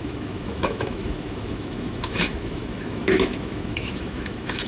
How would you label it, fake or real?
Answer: fake